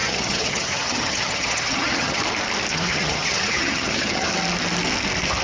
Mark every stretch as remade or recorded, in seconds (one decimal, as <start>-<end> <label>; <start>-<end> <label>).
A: 0.0-2.2 remade; 2.2-2.7 recorded; 2.7-4.3 remade; 4.3-5.4 recorded